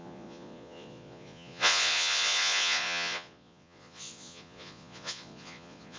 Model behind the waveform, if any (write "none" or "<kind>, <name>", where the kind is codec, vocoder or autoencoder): vocoder, Vocos